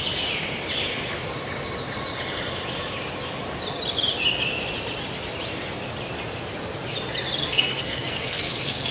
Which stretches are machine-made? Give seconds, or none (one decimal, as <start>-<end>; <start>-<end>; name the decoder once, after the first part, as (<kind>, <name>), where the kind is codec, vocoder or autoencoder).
7.4-8.9 (codec, SNAC)